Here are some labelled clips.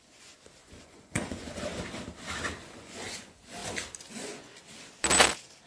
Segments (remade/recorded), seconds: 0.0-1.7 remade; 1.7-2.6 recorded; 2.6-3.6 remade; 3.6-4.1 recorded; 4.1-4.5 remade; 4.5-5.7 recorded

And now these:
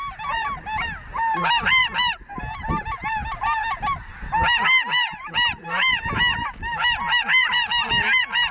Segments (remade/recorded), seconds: 0.0-8.5 recorded

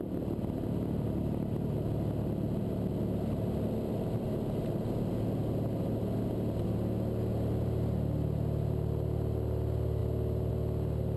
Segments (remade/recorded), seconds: 0.0-11.2 recorded

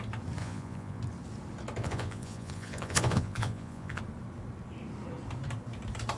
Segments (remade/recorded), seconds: 0.0-0.4 recorded; 0.4-1.0 remade; 1.0-1.8 recorded; 1.8-4.0 remade; 4.0-6.2 recorded

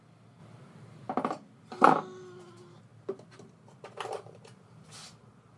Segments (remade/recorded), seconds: 0.0-5.6 recorded

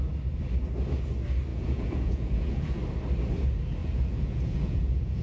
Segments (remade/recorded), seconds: 0.0-1.5 recorded; 1.5-2.8 remade; 2.8-3.8 recorded; 3.8-5.2 remade

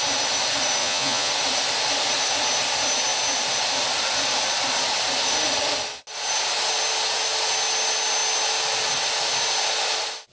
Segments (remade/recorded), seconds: 0.0-0.8 recorded; 0.8-1.3 remade; 1.3-10.3 recorded